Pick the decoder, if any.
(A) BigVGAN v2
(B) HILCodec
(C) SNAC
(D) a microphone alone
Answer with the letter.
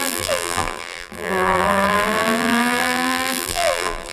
A